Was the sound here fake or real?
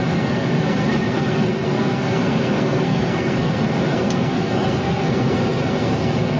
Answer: fake